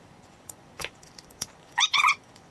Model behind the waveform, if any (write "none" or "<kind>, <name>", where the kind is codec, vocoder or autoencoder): vocoder, Vocos